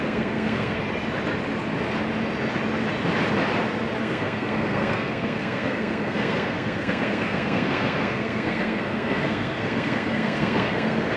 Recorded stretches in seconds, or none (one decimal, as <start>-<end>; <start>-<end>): 0.8-4.0